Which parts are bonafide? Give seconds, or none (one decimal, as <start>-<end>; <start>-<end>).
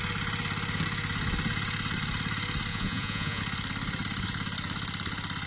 0.0-2.7; 3.4-5.5